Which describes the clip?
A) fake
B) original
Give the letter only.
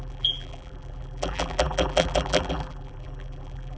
A